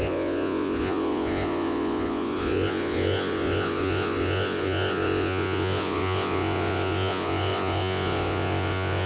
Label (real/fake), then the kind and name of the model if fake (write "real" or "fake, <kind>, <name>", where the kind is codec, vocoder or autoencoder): fake, vocoder, Vocos